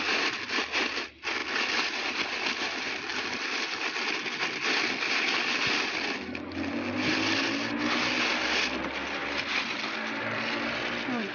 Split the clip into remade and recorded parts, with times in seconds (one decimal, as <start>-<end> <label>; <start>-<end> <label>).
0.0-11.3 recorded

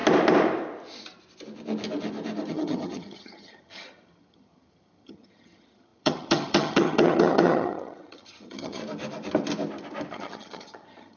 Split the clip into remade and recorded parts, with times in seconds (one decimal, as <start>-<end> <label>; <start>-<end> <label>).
0.0-2.5 recorded; 2.5-8.8 remade; 8.8-10.1 recorded; 10.1-11.2 remade

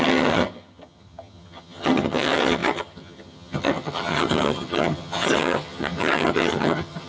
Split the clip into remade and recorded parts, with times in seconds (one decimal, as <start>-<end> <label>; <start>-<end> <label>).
0.0-7.1 remade

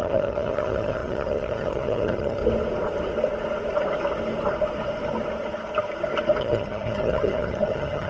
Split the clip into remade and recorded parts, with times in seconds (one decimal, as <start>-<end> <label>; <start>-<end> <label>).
0.0-2.4 remade; 2.4-6.4 recorded; 6.4-8.1 remade

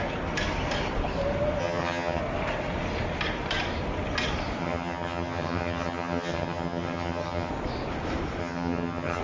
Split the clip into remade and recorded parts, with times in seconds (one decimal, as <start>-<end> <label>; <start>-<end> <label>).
0.0-1.6 recorded; 1.6-2.2 remade; 2.2-4.6 recorded; 4.6-7.5 remade; 7.5-8.4 recorded; 8.4-9.2 remade